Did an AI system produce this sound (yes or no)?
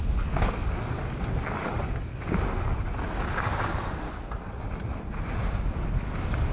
no